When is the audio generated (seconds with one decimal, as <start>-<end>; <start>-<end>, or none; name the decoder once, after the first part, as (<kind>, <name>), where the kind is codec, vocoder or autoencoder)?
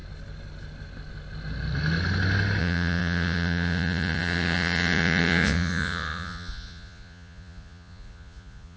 2.6-8.8 (vocoder, Vocos)